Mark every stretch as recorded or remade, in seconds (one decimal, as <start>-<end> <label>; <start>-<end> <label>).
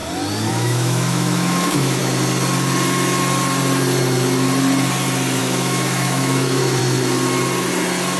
0.0-0.5 recorded; 0.5-2.0 remade; 2.0-5.4 recorded; 5.4-6.8 remade; 6.8-8.2 recorded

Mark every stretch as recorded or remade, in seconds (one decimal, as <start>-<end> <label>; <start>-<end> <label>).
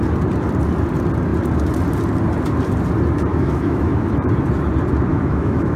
0.0-3.3 recorded; 3.3-4.3 remade; 4.3-5.1 recorded; 5.1-5.8 remade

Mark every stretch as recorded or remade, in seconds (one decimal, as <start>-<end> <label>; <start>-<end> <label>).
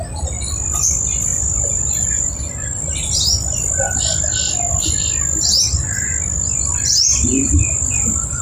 0.0-8.4 recorded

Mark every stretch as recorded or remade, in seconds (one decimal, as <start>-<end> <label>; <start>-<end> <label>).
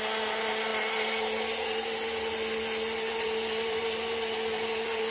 0.0-5.1 recorded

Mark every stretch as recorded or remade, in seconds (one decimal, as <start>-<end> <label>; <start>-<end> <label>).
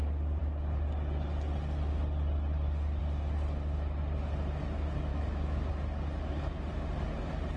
0.0-5.1 recorded; 5.1-5.7 remade; 5.7-7.6 recorded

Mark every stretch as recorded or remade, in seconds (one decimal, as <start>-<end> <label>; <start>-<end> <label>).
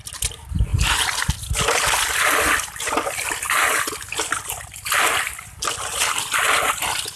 0.0-7.2 recorded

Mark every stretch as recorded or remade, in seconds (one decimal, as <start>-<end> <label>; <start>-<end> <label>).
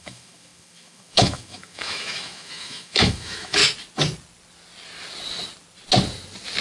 0.0-3.6 remade; 3.6-6.6 recorded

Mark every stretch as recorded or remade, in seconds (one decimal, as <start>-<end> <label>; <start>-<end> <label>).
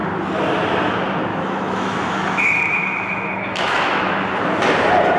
0.0-1.3 recorded; 1.3-4.4 remade; 4.4-5.2 recorded